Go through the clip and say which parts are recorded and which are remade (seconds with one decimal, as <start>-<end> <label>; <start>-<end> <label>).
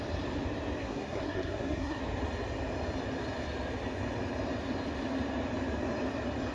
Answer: 0.0-0.8 recorded; 0.8-2.0 remade; 2.0-6.5 recorded